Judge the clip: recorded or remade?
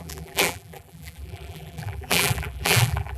remade